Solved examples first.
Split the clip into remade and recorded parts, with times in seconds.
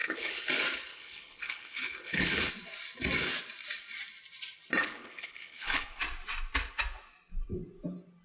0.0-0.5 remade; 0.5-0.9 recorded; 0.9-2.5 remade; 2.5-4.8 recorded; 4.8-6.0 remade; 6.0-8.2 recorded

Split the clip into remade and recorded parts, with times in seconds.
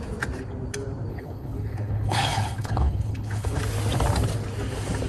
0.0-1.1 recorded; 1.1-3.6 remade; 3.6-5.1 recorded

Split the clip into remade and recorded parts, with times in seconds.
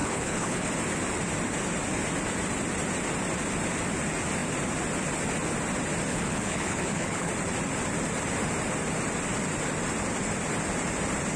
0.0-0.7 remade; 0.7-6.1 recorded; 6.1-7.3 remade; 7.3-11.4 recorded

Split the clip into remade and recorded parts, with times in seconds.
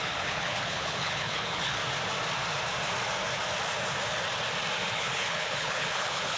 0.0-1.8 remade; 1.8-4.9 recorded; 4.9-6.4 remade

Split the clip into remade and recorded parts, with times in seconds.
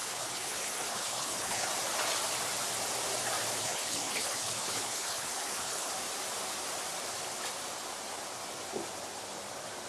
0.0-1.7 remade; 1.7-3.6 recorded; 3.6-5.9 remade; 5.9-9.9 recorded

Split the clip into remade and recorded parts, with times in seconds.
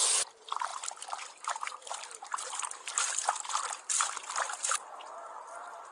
0.0-5.9 recorded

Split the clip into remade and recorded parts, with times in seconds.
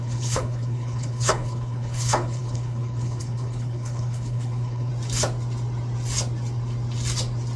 0.0-4.9 remade; 4.9-7.6 recorded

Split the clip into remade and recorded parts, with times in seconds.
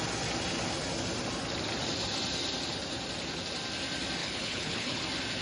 0.0-4.2 recorded; 4.2-5.0 remade; 5.0-5.4 recorded